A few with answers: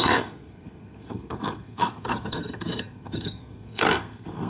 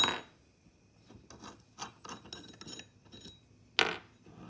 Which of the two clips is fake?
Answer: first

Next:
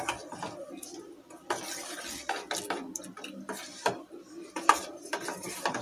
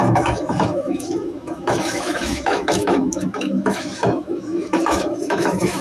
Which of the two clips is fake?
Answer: second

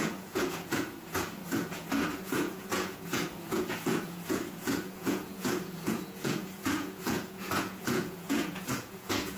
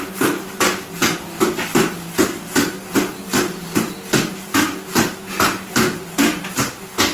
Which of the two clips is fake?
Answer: first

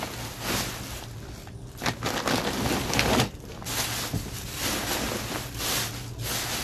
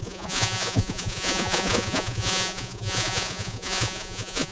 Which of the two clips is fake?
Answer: second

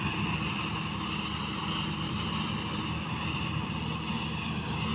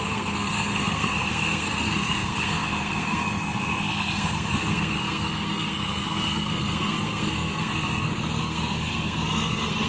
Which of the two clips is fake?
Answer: second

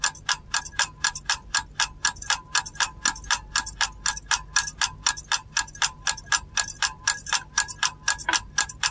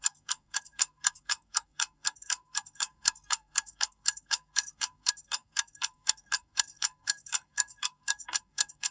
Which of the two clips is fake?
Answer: second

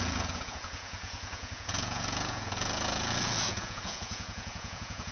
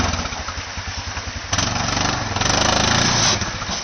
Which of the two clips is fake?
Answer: first